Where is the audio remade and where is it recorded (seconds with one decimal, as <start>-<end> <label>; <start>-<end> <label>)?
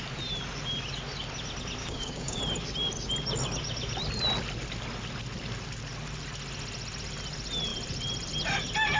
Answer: 0.0-1.8 recorded; 1.8-2.4 remade; 2.4-9.0 recorded